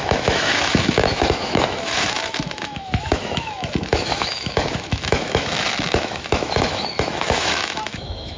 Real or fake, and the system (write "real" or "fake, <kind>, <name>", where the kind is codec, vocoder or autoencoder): fake, autoencoder, DAC-VAE